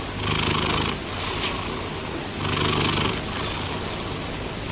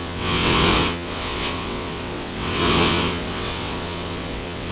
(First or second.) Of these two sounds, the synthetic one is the second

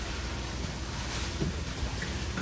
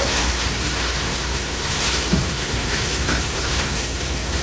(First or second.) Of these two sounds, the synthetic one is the second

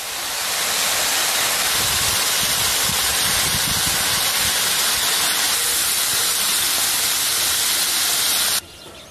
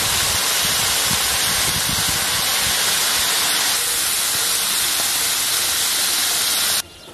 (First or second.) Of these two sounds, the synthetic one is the first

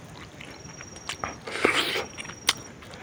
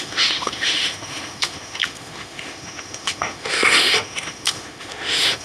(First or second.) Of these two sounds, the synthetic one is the second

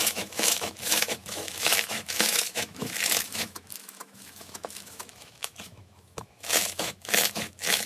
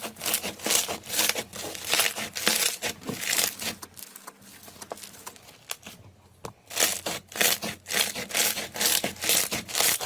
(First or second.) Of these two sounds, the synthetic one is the first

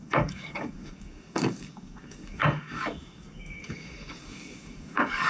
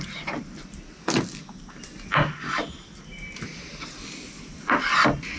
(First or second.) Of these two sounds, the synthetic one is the first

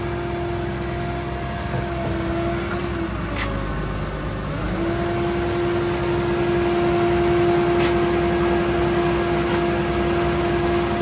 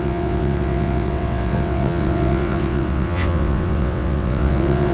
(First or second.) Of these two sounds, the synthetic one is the second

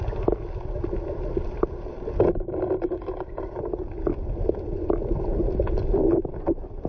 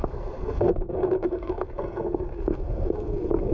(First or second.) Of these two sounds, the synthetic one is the second